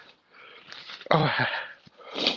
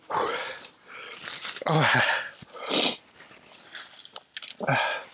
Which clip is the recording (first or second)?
second